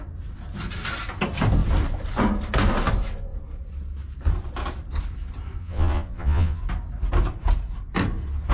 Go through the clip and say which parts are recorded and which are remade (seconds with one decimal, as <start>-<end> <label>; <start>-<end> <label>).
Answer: 0.0-5.6 recorded; 5.6-6.6 remade; 6.6-8.5 recorded